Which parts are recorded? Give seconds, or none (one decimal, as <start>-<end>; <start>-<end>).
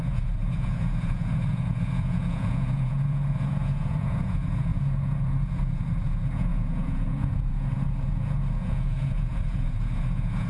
none